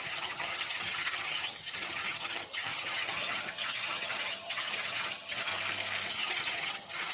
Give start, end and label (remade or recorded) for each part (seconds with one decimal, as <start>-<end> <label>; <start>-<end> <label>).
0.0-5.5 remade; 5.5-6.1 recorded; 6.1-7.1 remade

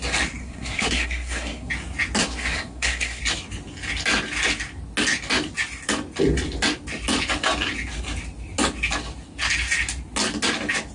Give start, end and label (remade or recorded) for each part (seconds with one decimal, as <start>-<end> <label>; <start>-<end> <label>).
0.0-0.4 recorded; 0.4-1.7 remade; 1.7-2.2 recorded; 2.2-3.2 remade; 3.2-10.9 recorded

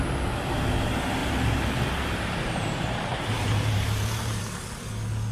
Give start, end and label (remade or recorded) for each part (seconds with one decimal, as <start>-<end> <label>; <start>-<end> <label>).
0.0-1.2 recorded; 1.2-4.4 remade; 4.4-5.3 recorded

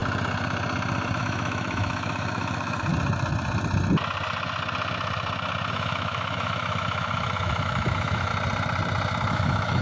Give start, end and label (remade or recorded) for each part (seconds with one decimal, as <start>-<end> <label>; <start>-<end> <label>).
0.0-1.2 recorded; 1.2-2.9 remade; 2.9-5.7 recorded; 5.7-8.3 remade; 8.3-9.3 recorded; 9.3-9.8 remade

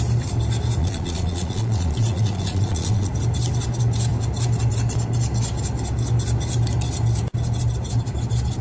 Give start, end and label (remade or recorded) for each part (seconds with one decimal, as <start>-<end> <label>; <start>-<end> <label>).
0.0-0.8 recorded; 0.8-3.1 remade; 3.1-8.6 recorded

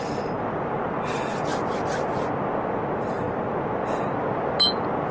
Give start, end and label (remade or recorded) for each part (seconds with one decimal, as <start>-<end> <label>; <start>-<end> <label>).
0.0-5.1 recorded